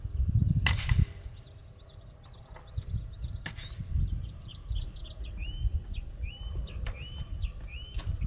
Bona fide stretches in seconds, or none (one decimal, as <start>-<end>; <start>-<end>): 0.0-8.3